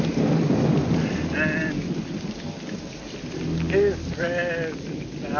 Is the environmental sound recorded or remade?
recorded